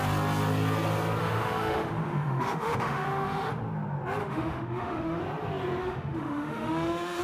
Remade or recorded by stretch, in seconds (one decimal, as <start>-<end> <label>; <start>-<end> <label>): 0.0-1.2 recorded; 1.2-3.5 remade; 3.5-4.2 recorded; 4.2-5.2 remade; 5.2-5.8 recorded; 5.8-7.2 remade